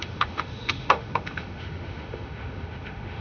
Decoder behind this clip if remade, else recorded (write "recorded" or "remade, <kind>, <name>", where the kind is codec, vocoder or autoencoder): remade, autoencoder, DAC-VAE